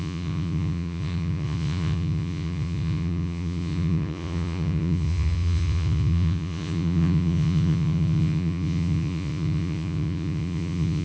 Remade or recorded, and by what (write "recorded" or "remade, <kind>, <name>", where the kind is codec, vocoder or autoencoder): remade, vocoder, Vocos